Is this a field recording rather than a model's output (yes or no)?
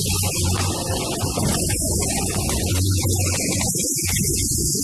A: no